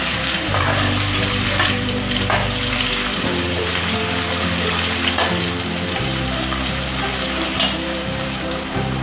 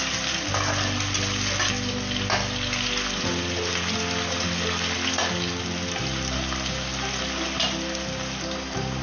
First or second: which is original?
second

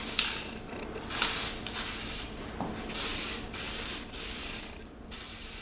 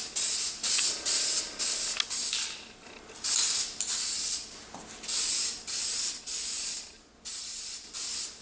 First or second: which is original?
second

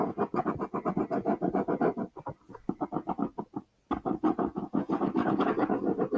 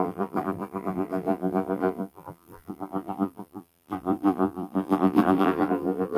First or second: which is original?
first